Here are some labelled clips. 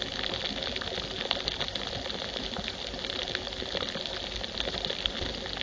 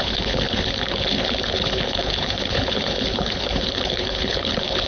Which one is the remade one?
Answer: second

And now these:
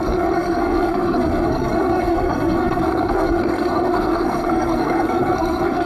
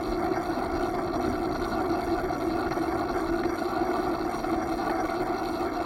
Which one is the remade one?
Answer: first